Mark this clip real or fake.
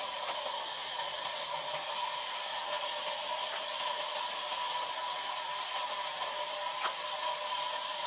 real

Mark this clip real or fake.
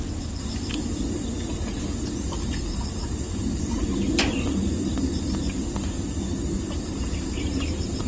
real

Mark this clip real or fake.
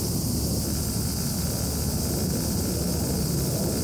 real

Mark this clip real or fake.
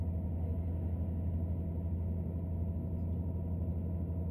real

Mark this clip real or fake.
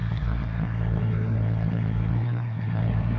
fake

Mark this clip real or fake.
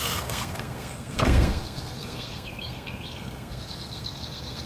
fake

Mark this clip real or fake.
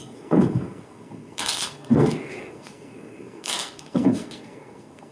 fake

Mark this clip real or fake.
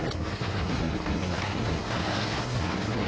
fake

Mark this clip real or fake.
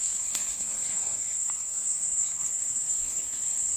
fake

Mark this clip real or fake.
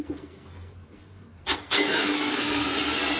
fake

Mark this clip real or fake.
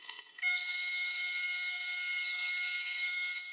fake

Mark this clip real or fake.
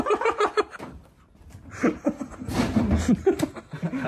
real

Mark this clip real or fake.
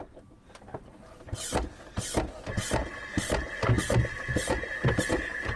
real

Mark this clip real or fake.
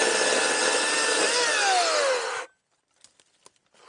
real